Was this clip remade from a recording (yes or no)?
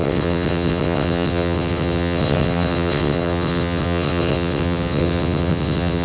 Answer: yes